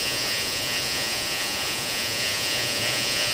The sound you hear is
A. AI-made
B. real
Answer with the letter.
A